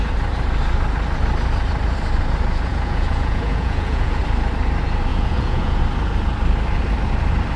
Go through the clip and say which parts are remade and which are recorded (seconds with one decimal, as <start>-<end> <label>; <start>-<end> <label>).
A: 0.0-2.7 recorded; 2.7-4.2 remade; 4.2-5.1 recorded; 5.1-5.8 remade; 5.8-7.6 recorded